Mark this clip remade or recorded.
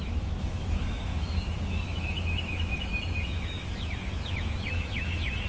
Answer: remade